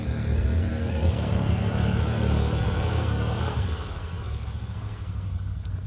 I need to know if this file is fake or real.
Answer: fake